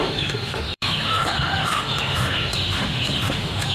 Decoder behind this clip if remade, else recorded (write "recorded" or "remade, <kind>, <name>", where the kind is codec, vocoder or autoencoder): remade, autoencoder, DAC-VAE